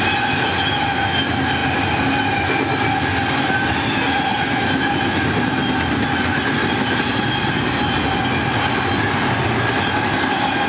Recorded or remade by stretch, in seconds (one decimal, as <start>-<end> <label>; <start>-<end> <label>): 0.0-10.7 recorded